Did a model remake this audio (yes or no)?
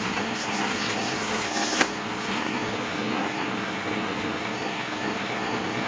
yes